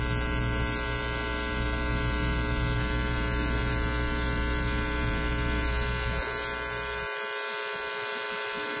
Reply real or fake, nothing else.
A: real